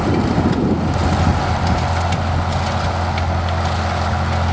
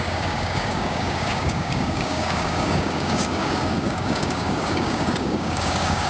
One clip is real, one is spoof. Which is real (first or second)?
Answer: first